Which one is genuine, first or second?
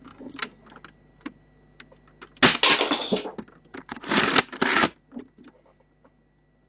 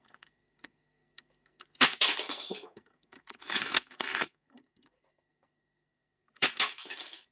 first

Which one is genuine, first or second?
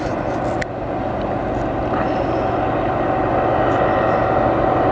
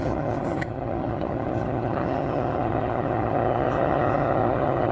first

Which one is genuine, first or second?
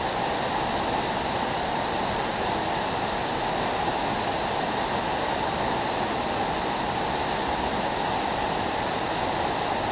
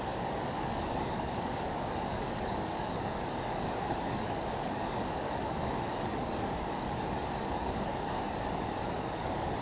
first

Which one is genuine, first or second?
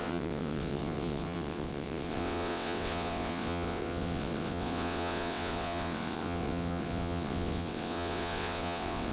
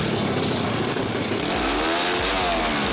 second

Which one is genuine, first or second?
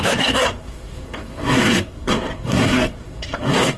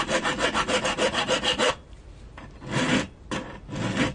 second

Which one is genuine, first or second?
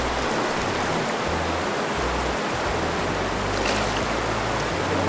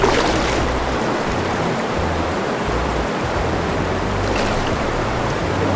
first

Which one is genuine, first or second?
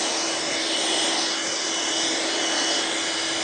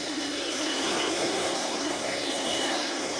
first